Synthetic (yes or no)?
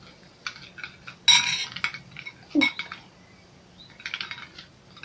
no